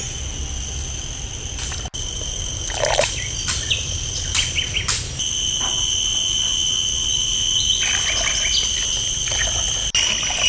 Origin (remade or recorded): recorded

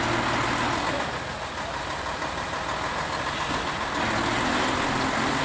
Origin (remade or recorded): recorded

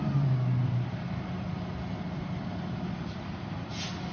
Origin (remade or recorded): recorded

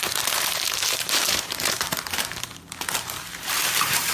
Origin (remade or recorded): remade